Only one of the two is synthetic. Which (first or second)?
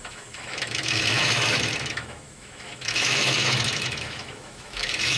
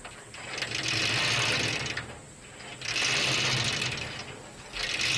first